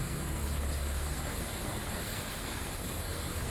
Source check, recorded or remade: remade